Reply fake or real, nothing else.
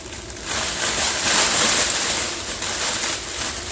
real